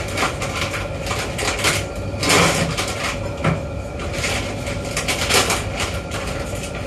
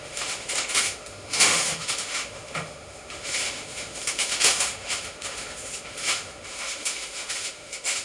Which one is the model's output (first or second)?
second